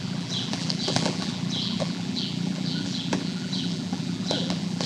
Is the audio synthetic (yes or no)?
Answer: yes